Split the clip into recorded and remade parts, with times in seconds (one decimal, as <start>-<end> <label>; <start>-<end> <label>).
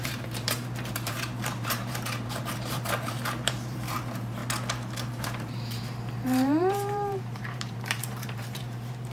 0.0-4.4 remade; 4.4-5.2 recorded; 5.2-9.1 remade